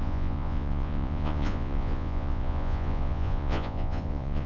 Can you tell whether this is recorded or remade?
remade